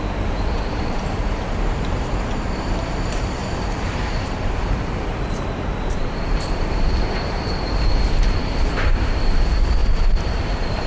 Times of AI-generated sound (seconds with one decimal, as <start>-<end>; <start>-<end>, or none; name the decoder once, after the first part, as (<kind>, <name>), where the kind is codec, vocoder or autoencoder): 0.0-10.9 (vocoder, BigVGAN v2)